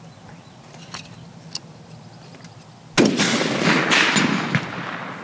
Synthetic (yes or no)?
no